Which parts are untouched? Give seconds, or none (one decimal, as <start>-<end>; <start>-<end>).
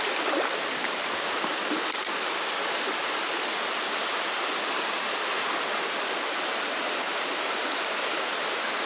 0.0-8.9